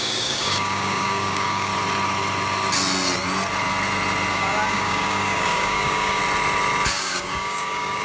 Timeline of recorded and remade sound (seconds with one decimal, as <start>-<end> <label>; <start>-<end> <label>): 0.0-1.7 remade; 1.7-4.3 recorded; 4.3-6.2 remade; 6.2-6.9 recorded; 6.9-8.0 remade

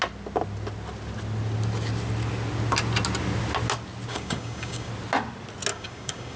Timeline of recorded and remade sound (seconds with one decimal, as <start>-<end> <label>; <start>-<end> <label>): 0.0-4.1 recorded; 4.1-4.9 remade; 4.9-5.7 recorded; 5.7-6.4 remade

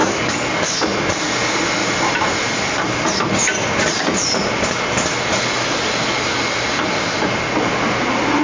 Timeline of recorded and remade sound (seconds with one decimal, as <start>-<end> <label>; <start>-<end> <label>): 0.0-0.8 remade; 0.8-8.4 recorded

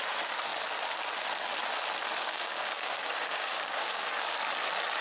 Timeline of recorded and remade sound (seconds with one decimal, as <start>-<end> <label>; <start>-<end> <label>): 0.0-2.3 recorded; 2.3-4.1 remade; 4.1-5.0 recorded

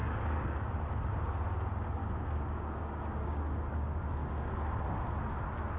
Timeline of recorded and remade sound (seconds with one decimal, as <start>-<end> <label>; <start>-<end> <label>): 0.0-0.7 remade; 0.7-2.0 recorded; 2.0-4.5 remade; 4.5-5.8 recorded

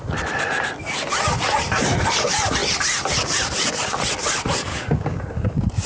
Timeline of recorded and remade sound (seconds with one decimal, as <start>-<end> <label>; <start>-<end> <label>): 0.0-4.7 recorded; 4.7-5.2 remade; 5.2-5.9 recorded

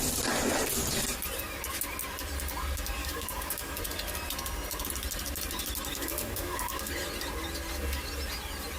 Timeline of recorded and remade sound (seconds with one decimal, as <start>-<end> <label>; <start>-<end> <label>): 0.0-3.0 recorded; 3.0-3.8 remade; 3.8-5.9 recorded; 5.9-6.9 remade; 6.9-8.8 recorded